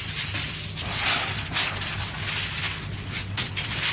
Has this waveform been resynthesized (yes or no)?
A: no